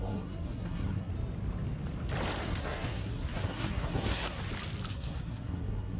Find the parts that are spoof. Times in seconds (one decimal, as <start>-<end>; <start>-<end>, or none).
0.0-1.1; 2.4-4.4; 4.9-6.0